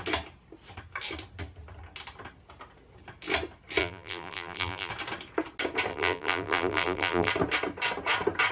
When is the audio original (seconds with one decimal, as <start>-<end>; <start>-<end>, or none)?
0.0-3.8; 4.9-5.9; 7.3-8.5